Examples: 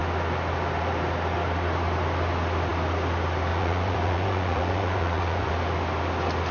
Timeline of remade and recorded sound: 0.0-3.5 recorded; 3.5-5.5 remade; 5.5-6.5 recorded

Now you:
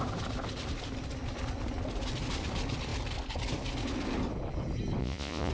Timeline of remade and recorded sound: 0.0-5.0 recorded; 5.0-5.5 remade

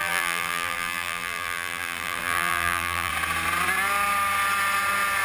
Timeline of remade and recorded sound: 0.0-3.1 remade; 3.1-5.2 recorded

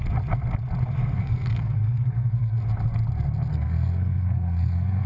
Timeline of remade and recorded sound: 0.0-1.2 recorded; 1.2-2.6 remade; 2.6-3.5 recorded; 3.5-5.1 remade

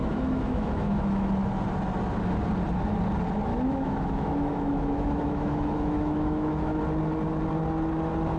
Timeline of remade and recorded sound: 0.0-1.3 remade; 1.3-3.5 recorded; 3.5-6.8 remade; 6.8-8.4 recorded